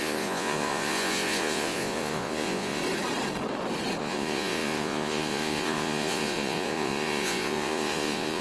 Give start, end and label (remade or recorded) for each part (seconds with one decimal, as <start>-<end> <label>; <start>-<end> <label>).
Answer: 0.0-2.8 remade; 2.8-4.0 recorded; 4.0-8.4 remade